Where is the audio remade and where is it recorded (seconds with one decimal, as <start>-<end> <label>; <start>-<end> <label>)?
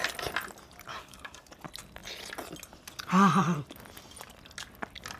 0.0-0.9 recorded; 0.9-1.5 remade; 1.5-5.2 recorded